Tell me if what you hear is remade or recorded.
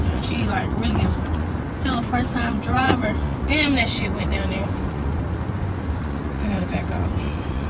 remade